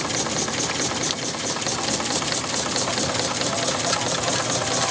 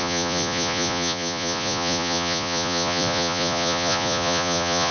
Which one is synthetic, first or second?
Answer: second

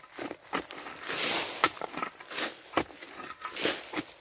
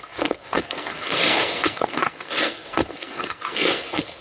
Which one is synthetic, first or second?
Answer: second